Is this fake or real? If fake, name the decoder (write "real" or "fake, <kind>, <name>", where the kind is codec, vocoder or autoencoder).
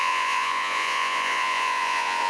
fake, vocoder, Vocos